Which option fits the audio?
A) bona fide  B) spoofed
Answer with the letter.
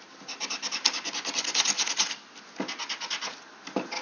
A